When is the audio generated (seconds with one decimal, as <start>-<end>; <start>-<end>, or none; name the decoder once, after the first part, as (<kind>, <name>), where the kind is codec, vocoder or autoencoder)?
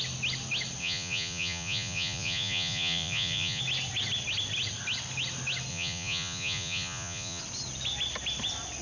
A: 0.8-3.6 (vocoder, Vocos); 5.7-7.4